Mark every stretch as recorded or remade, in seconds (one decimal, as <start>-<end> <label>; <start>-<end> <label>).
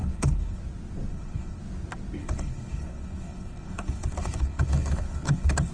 0.0-0.6 remade; 0.6-1.1 recorded; 1.1-1.6 remade; 1.6-2.2 recorded; 2.2-5.7 remade